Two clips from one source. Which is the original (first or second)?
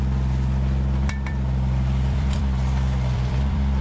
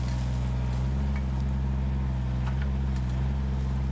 second